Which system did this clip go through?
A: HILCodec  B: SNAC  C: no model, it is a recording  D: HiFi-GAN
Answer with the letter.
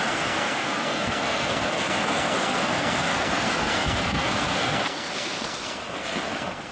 B